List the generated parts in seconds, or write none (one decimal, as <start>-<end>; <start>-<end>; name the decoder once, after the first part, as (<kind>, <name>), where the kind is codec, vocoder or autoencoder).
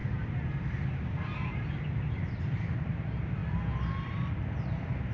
none